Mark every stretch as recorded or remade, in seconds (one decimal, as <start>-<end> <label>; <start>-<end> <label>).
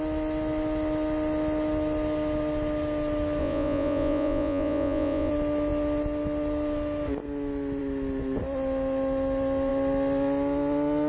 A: 0.0-3.4 recorded; 3.4-5.3 remade; 5.3-11.1 recorded